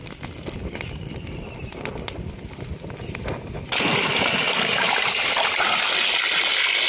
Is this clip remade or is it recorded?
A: recorded